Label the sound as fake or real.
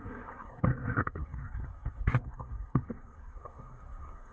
fake